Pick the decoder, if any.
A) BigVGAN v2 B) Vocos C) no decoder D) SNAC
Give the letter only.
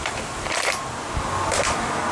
C